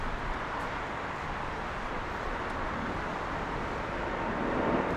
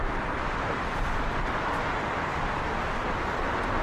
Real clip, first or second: first